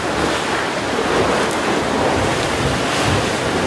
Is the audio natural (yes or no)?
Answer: yes